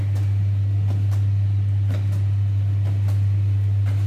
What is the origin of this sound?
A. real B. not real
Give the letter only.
A